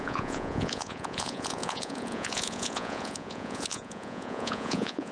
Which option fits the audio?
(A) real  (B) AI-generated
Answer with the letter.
B